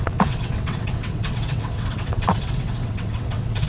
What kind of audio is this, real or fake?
fake